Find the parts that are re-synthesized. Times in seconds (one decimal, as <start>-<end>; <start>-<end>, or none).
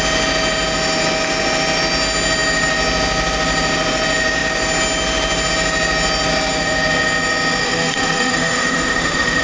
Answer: 7.6-9.4